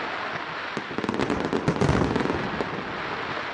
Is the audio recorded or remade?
recorded